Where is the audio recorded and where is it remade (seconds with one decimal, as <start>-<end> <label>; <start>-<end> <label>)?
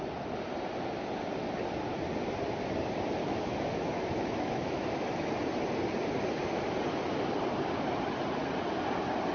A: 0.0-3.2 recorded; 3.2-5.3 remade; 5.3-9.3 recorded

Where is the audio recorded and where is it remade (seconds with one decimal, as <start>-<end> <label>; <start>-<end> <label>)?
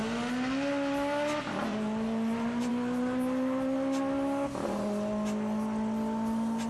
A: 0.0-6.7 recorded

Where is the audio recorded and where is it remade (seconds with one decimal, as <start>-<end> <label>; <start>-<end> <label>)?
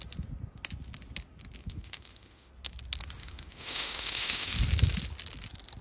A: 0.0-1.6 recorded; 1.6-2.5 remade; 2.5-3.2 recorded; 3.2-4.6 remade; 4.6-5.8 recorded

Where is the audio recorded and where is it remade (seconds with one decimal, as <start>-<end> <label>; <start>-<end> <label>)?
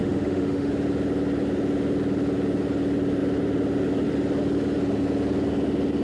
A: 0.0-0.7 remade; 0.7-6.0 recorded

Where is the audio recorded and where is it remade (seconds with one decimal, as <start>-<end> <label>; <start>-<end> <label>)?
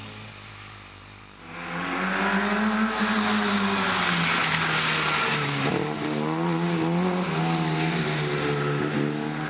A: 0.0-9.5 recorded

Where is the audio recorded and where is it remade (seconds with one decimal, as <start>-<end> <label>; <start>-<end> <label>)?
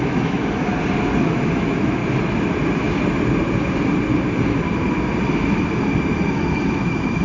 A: 0.0-0.7 remade; 0.7-1.2 recorded; 1.2-2.0 remade; 2.0-6.3 recorded; 6.3-7.2 remade